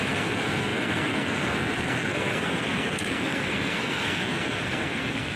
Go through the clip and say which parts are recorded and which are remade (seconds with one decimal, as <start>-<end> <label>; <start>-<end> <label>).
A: 0.0-5.4 remade